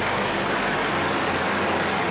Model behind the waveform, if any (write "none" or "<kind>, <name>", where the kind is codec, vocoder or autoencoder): codec, DAC